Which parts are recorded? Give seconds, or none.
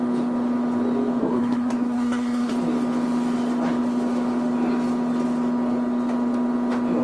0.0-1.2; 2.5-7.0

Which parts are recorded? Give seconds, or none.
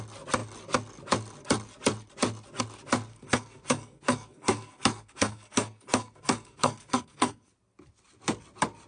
0.0-3.1; 7.5-8.9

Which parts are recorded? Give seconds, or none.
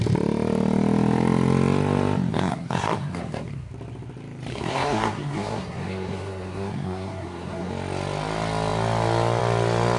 0.0-2.3; 3.7-4.5; 7.7-10.0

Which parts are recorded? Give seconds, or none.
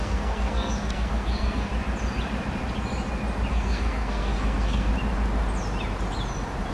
1.7-3.5; 4.9-6.7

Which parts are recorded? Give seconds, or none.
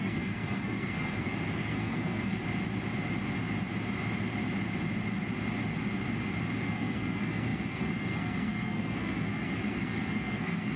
2.4-6.6